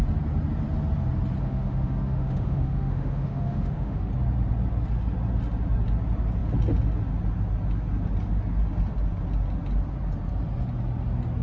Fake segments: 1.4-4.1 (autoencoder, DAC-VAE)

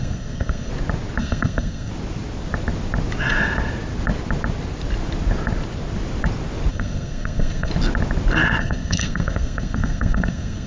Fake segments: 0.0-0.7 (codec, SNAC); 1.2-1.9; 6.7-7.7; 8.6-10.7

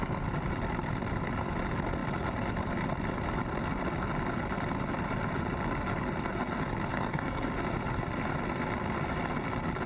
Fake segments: 6.9-7.5 (codec, SNAC)